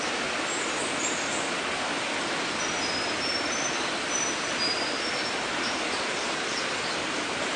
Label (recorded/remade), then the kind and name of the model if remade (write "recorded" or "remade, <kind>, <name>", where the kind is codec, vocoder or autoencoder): recorded